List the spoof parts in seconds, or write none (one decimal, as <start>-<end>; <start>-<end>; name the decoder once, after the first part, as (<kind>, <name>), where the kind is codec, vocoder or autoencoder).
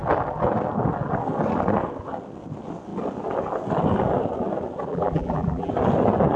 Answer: 4.9-5.7 (vocoder, BigVGAN v2)